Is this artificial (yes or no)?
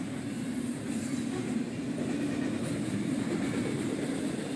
no